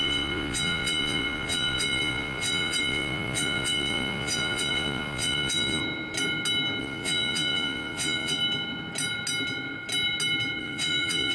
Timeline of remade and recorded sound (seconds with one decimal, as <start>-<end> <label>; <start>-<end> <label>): 0.0-5.8 remade; 5.8-6.8 recorded; 6.8-8.4 remade; 8.4-10.6 recorded; 10.6-11.3 remade